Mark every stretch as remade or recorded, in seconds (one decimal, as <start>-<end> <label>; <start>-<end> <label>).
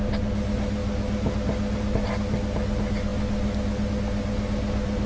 0.0-5.1 recorded